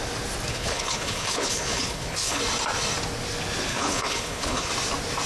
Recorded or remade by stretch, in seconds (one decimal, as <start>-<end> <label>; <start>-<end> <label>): 0.0-0.5 recorded; 0.5-2.4 remade; 2.4-3.7 recorded; 3.7-4.7 remade; 4.7-5.3 recorded